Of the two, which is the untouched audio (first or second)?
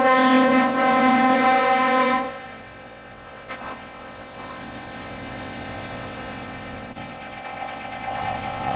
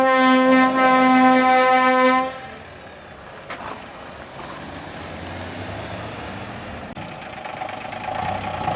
second